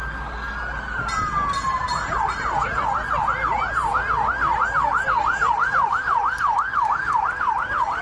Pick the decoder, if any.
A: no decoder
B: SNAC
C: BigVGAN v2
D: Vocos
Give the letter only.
A